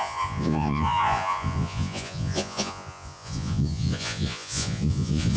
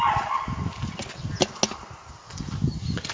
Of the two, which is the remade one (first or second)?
first